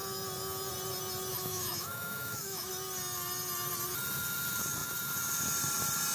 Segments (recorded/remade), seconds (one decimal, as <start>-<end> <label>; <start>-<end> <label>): 0.0-1.3 recorded; 1.3-2.7 remade; 2.7-6.1 recorded

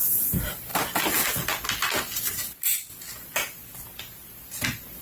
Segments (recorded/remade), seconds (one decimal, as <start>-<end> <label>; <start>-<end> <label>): 0.0-5.0 recorded

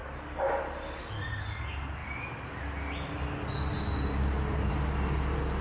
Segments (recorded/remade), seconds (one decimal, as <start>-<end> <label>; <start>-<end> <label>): 0.0-5.6 recorded

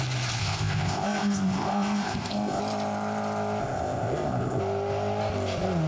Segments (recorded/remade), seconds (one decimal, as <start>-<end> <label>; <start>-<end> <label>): 0.0-0.4 recorded; 0.4-2.6 remade; 2.6-3.6 recorded; 3.6-4.6 remade; 4.6-5.9 recorded